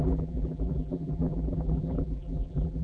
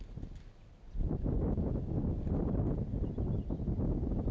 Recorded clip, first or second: second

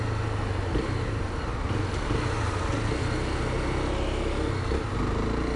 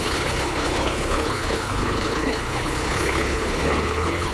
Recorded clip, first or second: first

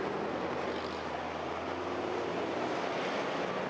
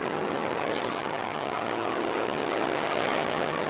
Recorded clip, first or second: first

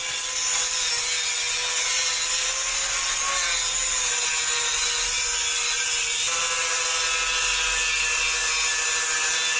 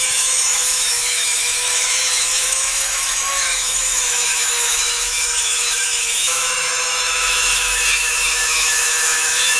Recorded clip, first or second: first